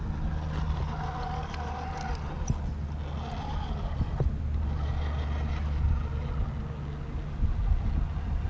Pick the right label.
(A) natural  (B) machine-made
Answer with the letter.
A